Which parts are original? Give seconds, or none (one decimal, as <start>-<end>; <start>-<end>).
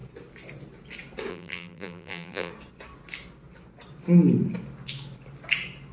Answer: 0.0-1.3; 2.5-5.9